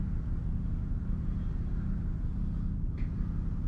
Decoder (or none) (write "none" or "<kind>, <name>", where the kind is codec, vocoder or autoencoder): none